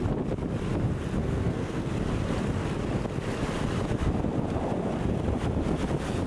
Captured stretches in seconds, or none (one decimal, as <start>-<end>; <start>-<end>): 0.0-1.2; 1.9-6.3